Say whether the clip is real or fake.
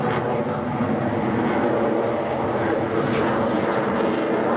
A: real